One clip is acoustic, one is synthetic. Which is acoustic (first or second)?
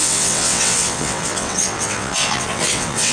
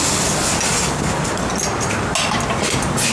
second